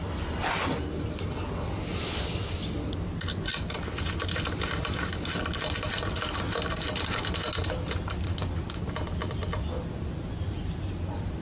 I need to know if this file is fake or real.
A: real